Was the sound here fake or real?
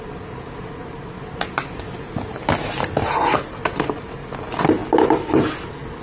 real